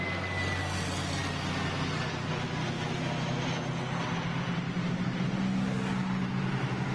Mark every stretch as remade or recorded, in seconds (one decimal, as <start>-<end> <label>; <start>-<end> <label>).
0.0-6.9 recorded